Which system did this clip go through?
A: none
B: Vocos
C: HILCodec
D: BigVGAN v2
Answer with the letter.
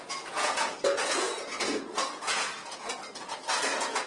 B